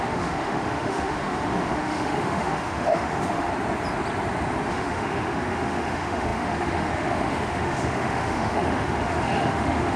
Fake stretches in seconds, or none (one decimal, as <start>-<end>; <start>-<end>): 0.0-3.5; 4.7-10.0